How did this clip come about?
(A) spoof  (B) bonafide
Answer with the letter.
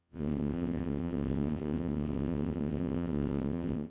A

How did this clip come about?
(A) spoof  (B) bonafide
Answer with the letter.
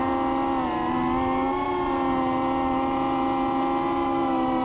B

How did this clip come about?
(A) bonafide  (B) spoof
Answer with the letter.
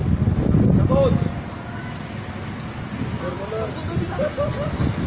A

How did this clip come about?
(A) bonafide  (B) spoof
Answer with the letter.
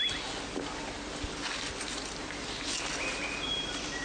A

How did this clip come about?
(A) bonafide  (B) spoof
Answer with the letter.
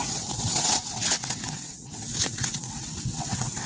B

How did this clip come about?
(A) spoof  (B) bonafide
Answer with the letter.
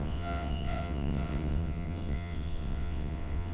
A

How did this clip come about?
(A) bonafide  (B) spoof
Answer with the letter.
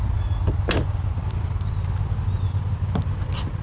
A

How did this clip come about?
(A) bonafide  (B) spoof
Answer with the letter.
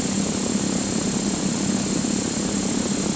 A